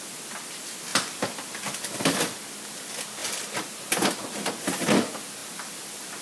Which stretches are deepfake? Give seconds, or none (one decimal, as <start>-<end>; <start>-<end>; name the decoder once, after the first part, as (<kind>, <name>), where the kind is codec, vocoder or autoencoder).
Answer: none